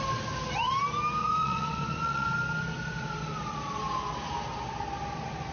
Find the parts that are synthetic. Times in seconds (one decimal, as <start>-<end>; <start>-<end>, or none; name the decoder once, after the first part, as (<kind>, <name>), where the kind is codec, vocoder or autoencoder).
1.2-2.3 (vocoder, Vocos)